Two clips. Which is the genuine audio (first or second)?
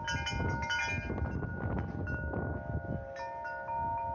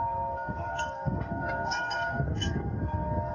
first